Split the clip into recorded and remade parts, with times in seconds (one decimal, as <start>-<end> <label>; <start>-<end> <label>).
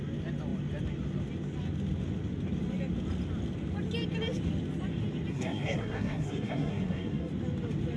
0.0-5.3 recorded; 5.3-7.3 remade; 7.3-8.0 recorded